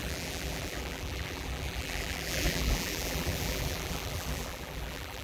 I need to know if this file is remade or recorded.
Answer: remade